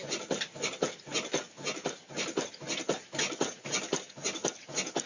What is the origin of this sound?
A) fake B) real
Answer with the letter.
B